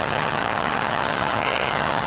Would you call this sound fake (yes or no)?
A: yes